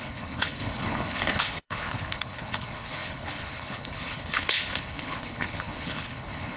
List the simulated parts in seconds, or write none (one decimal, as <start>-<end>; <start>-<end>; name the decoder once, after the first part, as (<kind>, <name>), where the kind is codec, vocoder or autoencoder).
0.0-6.6 (codec, HILCodec)